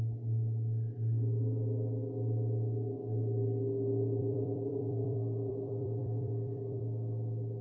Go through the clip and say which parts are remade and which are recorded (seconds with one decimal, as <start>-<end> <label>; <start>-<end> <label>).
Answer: 0.0-4.2 recorded; 4.2-6.8 remade; 6.8-7.6 recorded